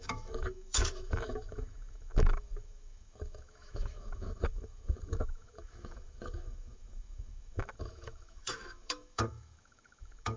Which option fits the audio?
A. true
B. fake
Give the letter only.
B